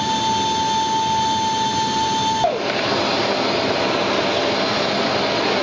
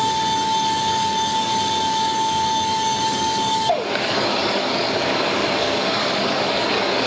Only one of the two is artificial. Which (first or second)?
second